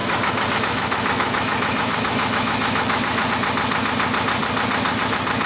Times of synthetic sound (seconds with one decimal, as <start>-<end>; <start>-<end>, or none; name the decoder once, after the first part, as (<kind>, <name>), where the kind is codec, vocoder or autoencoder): 0.0-3.3 (autoencoder, DAC-VAE)